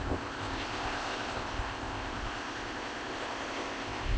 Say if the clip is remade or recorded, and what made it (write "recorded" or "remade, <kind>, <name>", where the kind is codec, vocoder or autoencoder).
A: remade, codec, ZipCodec